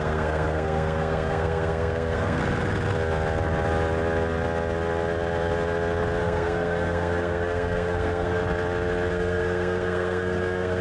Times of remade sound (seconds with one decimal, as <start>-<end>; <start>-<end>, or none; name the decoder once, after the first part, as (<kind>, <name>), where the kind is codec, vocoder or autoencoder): 0.0-2.4 (codec, SNAC); 6.2-8.4; 9.1-10.8